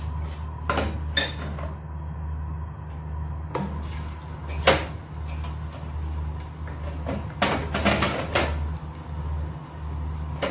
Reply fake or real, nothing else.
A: real